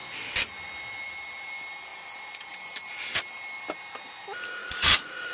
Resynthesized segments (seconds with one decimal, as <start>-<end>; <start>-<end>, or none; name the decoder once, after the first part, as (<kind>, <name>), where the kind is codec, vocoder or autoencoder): 4.6-5.3 (vocoder, Vocos)